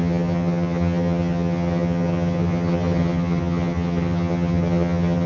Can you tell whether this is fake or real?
fake